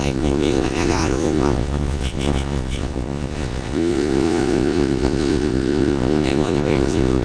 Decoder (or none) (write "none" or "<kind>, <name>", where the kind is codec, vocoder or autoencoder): vocoder, Vocos